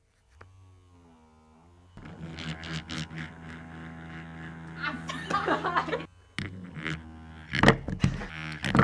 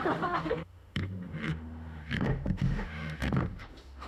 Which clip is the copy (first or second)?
second